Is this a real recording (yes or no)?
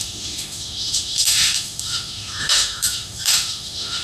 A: no